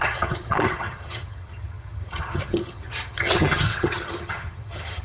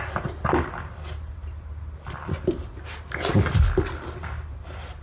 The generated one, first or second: first